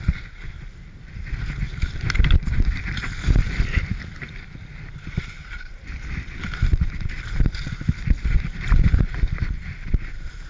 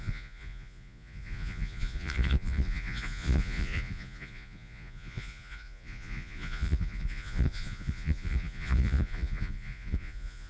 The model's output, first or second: second